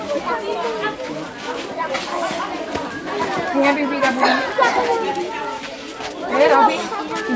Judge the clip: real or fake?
real